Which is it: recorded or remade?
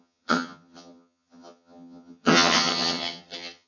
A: remade